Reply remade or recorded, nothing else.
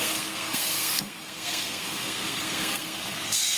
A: remade